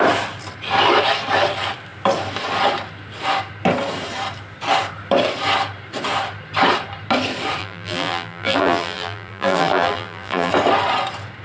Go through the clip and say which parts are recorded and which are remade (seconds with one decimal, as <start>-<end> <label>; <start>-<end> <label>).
0.0-7.6 recorded; 7.6-10.5 remade; 10.5-11.4 recorded